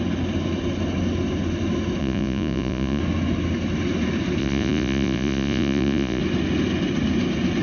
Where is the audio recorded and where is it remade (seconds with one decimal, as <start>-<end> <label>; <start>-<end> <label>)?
0.0-2.0 recorded; 2.0-3.0 remade; 3.0-4.4 recorded; 4.4-6.2 remade; 6.2-7.6 recorded